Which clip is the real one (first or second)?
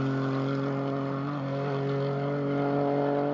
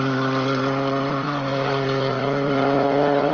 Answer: first